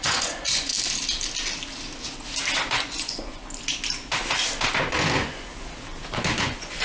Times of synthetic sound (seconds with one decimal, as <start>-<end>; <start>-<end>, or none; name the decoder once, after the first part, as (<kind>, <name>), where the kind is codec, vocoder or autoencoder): 0.0-0.7 (vocoder, Vocos); 2.7-3.4; 4.9-5.5; 6.0-6.8

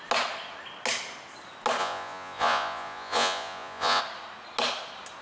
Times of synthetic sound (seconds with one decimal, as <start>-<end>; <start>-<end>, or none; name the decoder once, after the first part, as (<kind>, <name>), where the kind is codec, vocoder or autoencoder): 1.8-4.0 (vocoder, Vocos)

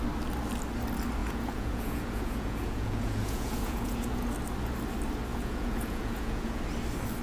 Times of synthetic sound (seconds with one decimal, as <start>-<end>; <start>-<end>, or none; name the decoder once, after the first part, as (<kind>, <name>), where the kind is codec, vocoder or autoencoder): 1.2-4.3 (vocoder, Vocos); 5.3-6.6